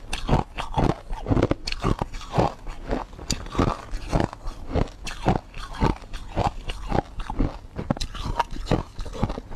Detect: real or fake real